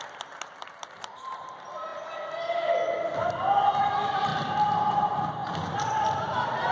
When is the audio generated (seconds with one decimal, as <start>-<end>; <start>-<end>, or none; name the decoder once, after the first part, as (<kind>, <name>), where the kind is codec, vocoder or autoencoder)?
0.0-1.9 (vocoder, BigVGAN v2); 3.8-4.3; 4.9-6.7